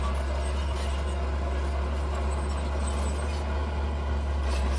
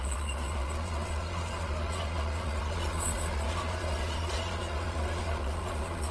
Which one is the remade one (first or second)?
second